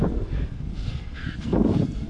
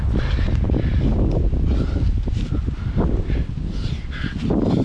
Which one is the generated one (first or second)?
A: first